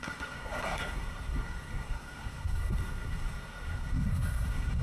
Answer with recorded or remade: remade